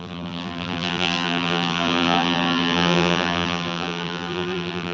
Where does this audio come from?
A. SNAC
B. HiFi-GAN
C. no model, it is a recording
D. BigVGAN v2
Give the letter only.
D